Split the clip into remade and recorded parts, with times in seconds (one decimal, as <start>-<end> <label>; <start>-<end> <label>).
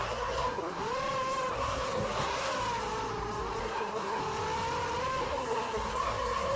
0.0-0.8 remade; 0.8-1.5 recorded; 1.5-2.5 remade; 2.5-3.6 recorded; 3.6-4.2 remade; 4.2-5.2 recorded; 5.2-6.6 remade